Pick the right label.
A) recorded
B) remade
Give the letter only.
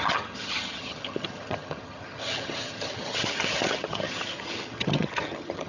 B